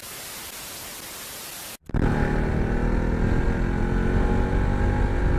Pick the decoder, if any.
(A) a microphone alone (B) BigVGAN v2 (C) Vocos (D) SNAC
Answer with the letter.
A